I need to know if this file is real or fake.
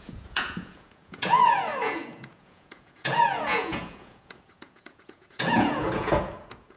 fake